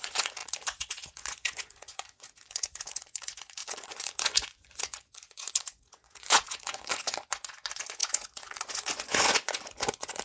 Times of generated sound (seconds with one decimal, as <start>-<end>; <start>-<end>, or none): 0.0-10.2